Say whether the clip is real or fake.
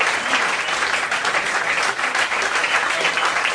real